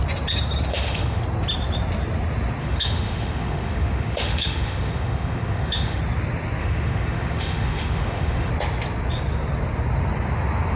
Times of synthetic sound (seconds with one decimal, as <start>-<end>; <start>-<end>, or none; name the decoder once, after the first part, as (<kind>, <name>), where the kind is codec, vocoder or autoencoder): 0.7-1.2 (autoencoder, DAC-VAE); 2.6-6.0; 6.6-8.5